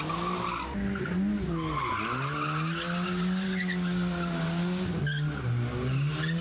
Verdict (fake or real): real